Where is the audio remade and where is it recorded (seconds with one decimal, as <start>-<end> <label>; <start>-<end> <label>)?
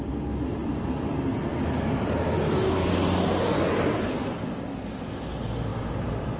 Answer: 0.0-0.6 recorded; 0.6-1.1 remade; 1.1-1.5 recorded; 1.5-2.1 remade; 2.1-5.7 recorded; 5.7-6.4 remade